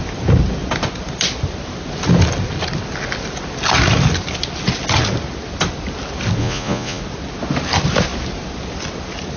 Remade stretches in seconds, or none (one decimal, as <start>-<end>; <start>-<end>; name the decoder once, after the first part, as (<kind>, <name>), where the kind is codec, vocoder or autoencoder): 6.4-7.0 (vocoder, Vocos)